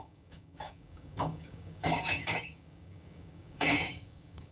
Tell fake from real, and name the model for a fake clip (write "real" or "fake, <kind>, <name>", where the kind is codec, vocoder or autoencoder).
fake, codec, DAC